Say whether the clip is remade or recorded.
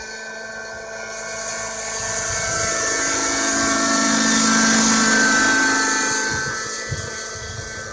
recorded